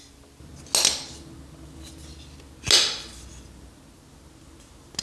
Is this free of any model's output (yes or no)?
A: yes